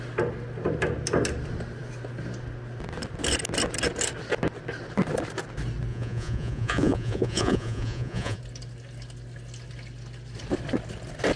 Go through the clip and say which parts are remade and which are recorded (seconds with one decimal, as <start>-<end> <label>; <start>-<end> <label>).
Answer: 0.0-5.9 recorded; 5.9-8.4 remade; 8.4-11.4 recorded